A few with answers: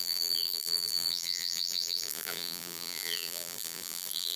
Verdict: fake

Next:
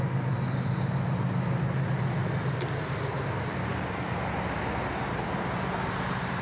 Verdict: real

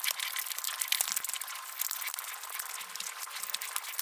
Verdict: real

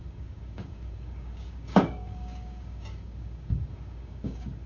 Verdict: fake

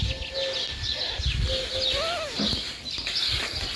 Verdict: real